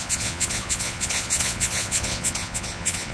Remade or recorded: remade